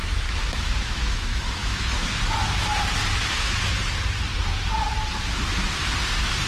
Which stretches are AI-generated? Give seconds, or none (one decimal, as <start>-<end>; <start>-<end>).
0.0-2.2